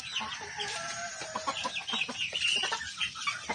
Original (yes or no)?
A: no